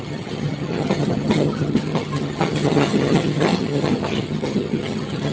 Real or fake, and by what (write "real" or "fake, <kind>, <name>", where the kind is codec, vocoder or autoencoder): fake, vocoder, HiFi-GAN